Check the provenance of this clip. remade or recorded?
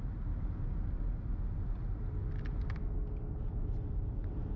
recorded